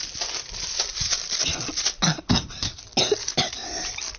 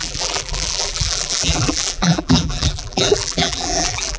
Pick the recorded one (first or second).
first